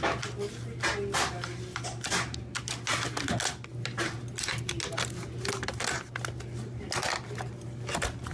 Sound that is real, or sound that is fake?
real